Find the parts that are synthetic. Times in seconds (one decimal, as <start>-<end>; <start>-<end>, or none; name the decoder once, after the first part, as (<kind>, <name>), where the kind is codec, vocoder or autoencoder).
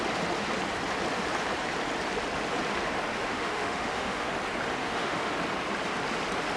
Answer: 3.1-4.3 (autoencoder, DAC-VAE); 4.8-5.3